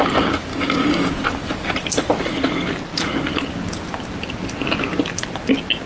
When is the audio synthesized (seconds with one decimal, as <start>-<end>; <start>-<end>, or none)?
0.5-1.1